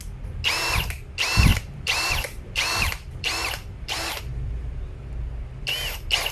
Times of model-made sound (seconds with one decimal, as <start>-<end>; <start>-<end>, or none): 1.5-4.2